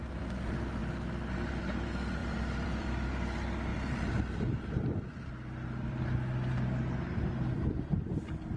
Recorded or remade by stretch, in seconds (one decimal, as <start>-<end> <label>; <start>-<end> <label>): 0.0-2.2 recorded; 2.2-3.1 remade; 3.1-3.7 recorded; 3.7-8.2 remade; 8.2-8.6 recorded